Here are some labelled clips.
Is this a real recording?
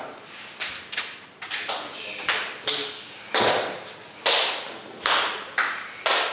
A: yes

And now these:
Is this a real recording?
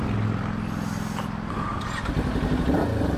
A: yes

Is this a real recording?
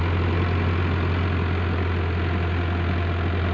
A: yes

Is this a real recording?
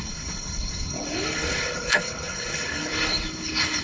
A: no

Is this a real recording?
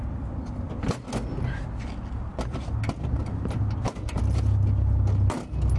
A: yes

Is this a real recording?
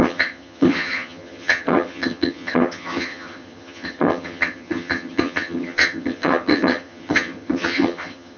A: no